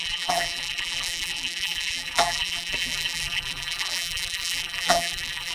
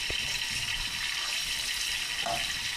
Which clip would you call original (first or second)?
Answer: second